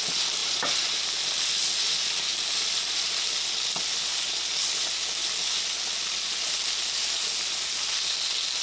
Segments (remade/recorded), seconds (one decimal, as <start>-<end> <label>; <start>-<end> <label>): 0.0-0.4 recorded; 0.4-1.1 remade; 1.1-8.6 recorded